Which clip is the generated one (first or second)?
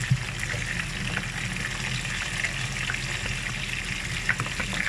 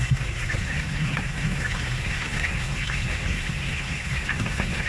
second